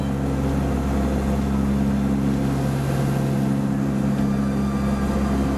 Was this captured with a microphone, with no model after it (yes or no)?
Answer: yes